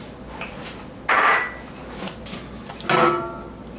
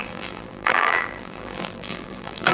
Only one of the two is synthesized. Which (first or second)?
second